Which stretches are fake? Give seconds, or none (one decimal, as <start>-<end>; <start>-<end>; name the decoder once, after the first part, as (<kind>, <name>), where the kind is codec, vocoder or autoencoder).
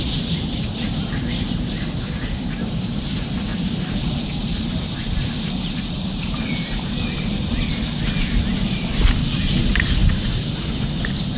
3.5-6.9 (vocoder, BigVGAN v2)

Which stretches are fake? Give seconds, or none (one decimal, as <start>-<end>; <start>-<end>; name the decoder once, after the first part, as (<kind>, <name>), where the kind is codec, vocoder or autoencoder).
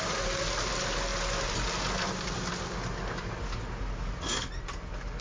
none